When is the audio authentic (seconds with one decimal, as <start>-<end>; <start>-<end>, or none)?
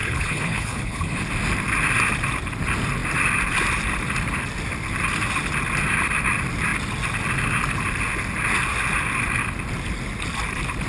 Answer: 1.2-10.9